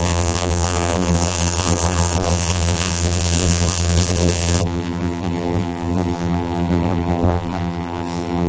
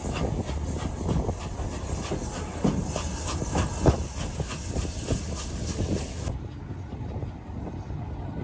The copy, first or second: first